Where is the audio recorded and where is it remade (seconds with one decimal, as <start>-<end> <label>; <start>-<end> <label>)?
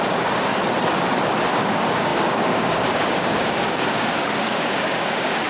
0.0-0.5 remade; 0.5-1.5 recorded; 1.5-5.5 remade